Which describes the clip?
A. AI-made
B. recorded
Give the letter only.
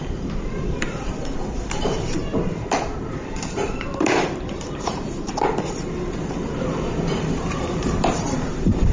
A